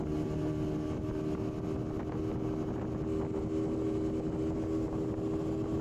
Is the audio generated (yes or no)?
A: no